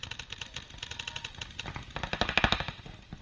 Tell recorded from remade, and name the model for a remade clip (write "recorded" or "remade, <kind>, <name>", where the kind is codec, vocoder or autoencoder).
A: recorded